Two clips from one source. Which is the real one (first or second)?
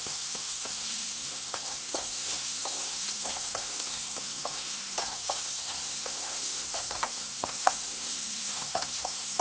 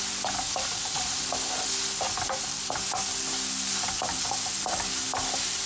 second